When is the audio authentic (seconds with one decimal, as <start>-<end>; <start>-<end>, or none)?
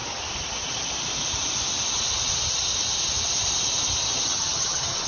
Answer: 0.0-4.0